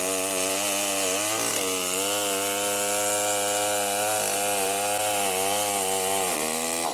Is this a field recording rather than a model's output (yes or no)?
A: yes